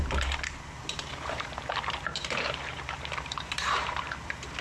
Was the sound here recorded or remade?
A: remade